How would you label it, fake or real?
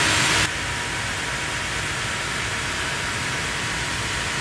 real